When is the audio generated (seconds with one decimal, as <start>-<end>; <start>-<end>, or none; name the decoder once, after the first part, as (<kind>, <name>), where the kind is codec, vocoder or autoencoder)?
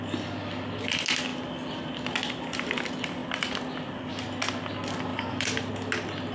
1.3-1.9 (vocoder, BigVGAN v2); 3.2-4.1; 5.1-5.7